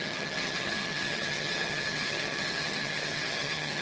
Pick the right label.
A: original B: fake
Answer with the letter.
B